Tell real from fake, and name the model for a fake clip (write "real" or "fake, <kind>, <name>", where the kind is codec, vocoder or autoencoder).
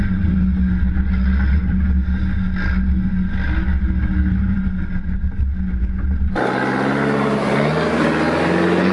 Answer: real